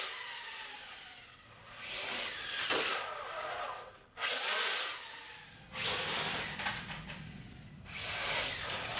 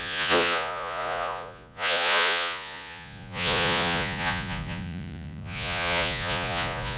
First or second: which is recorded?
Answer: first